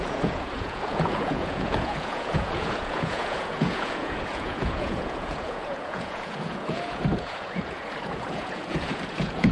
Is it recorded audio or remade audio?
remade